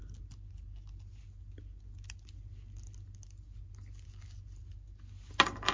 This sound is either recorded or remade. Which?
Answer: recorded